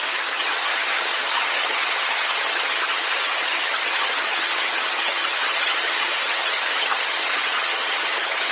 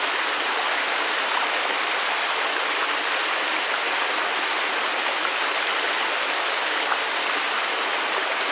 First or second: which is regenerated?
first